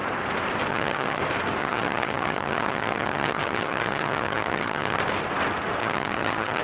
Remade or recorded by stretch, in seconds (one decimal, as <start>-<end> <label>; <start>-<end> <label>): 0.0-0.7 recorded; 0.7-1.2 remade; 1.2-1.6 recorded; 1.6-5.0 remade; 5.0-5.8 recorded; 5.8-6.6 remade